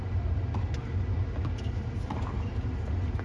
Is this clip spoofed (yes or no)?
no